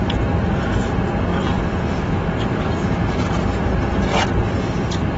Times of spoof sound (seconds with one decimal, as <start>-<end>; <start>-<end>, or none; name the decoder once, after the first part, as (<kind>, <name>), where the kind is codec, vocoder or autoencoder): none